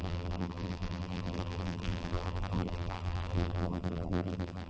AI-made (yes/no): yes